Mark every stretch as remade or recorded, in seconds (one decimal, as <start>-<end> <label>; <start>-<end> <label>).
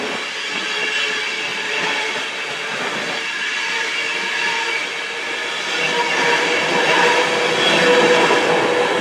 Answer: 0.0-1.5 recorded; 1.5-2.8 remade; 2.8-9.0 recorded